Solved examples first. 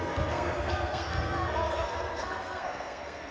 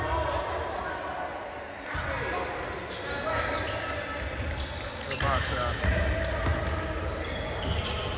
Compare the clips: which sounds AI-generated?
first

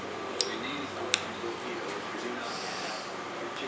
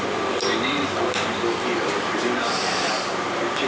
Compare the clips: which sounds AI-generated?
second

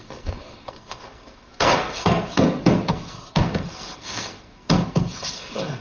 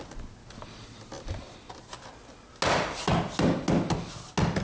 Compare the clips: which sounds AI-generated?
first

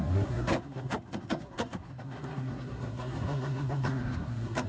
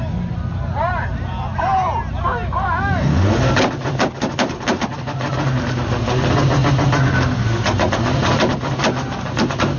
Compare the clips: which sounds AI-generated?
first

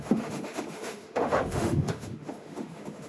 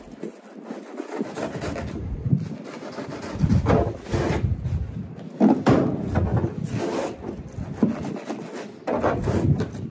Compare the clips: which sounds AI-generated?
first